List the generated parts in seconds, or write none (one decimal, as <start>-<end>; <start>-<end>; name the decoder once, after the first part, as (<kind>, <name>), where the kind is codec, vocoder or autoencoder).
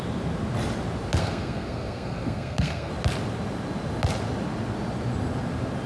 1.2-2.9 (codec, SNAC)